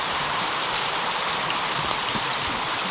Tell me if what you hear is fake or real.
real